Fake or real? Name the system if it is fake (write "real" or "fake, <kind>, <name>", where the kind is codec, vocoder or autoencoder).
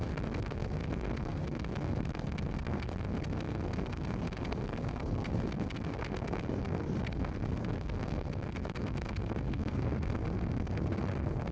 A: fake, codec, SNAC